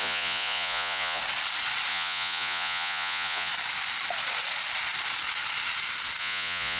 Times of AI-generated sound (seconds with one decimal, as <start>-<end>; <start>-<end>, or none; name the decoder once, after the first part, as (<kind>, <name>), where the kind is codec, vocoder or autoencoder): 0.0-1.2 (vocoder, Vocos); 1.9-3.5; 6.2-6.8